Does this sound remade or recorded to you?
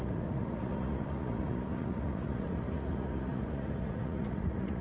remade